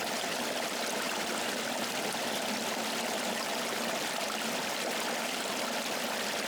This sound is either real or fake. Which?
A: real